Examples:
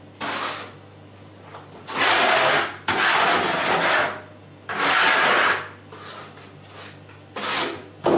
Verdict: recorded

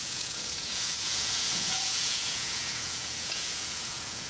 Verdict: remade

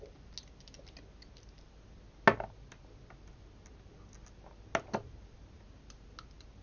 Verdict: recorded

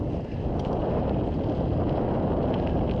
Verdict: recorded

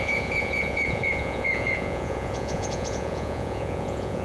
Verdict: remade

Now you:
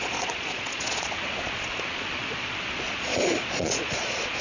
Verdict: remade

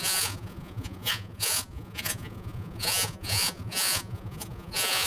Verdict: remade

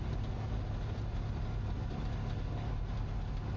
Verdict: recorded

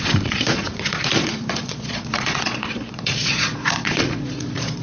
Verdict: remade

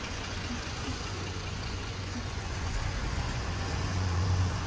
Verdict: remade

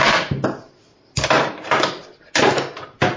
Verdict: recorded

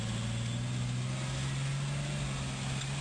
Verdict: recorded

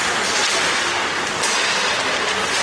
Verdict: recorded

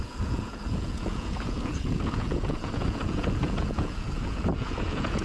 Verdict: remade